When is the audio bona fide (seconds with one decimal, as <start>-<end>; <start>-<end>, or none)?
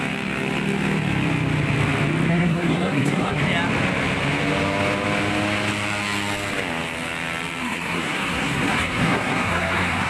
0.0-2.3; 3.4-7.6